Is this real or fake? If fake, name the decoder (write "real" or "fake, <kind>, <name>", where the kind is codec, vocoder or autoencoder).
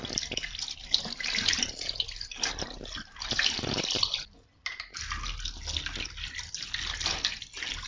real